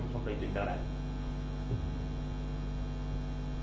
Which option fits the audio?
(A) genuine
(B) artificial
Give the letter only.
A